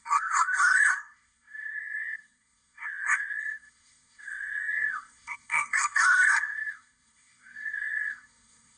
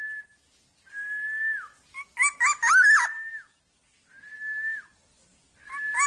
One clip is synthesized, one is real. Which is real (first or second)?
second